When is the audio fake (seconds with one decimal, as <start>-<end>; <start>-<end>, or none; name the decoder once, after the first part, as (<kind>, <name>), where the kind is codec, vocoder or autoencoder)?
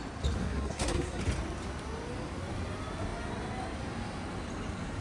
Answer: 0.4-1.2 (codec, SNAC)